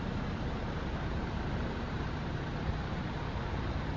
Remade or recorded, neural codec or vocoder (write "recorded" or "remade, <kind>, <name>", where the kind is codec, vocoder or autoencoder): remade, vocoder, BigVGAN v2